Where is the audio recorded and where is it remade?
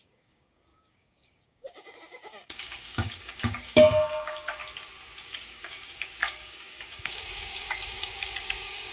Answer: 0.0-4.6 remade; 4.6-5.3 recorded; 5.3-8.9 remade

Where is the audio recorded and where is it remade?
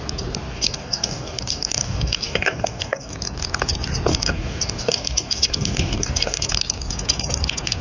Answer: 0.0-0.5 recorded; 0.5-3.1 remade; 3.1-4.1 recorded; 4.1-6.5 remade; 6.5-7.8 recorded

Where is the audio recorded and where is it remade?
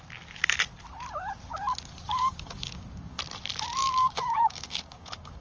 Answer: 0.0-2.1 recorded; 2.1-3.2 remade; 3.2-3.8 recorded; 3.8-5.4 remade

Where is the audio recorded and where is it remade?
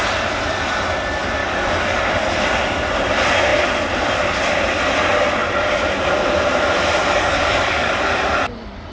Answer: 0.0-1.4 recorded; 1.4-2.1 remade; 2.1-7.0 recorded; 7.0-8.2 remade; 8.2-8.9 recorded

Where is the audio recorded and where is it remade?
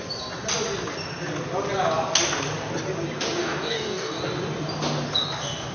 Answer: 0.0-3.4 recorded; 3.4-4.2 remade; 4.2-5.7 recorded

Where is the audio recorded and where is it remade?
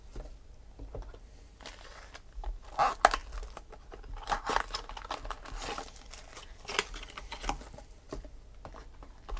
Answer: 0.0-9.4 recorded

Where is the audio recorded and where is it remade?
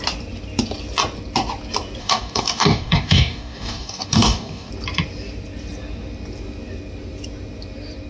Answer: 0.0-2.0 recorded; 2.0-4.7 remade; 4.7-8.1 recorded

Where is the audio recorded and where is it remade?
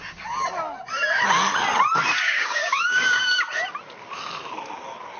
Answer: 0.0-2.2 recorded; 2.2-3.3 remade; 3.3-5.2 recorded